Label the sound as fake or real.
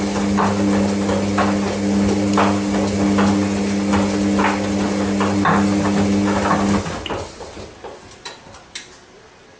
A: real